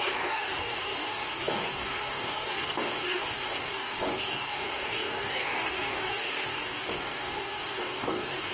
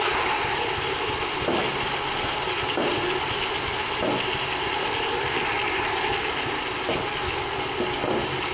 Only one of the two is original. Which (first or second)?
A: second